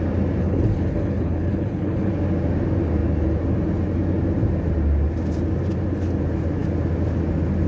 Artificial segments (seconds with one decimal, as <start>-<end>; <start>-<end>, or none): 0.4-2.1